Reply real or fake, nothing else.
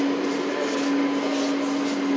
real